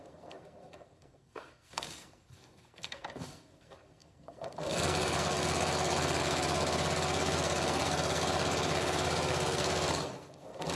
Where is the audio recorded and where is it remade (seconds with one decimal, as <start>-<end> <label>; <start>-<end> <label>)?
0.0-10.8 remade